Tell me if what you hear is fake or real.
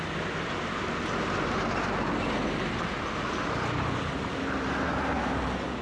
real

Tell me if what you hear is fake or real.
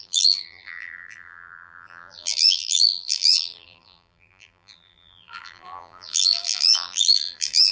fake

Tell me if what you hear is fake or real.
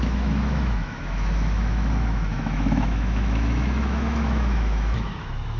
fake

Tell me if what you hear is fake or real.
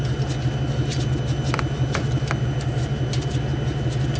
real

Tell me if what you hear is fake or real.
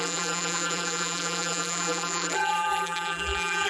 fake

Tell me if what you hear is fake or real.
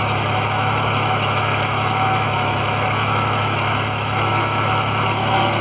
fake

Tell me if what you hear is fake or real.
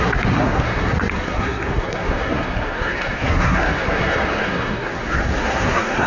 fake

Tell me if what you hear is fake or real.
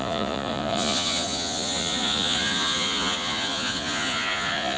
fake